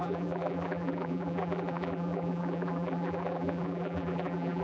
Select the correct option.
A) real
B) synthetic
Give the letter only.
B